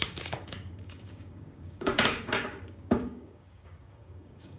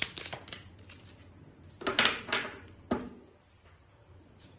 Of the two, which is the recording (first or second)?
second